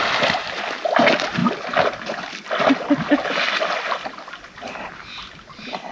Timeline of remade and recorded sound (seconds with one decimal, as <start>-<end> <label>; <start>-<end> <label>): 0.0-5.9 recorded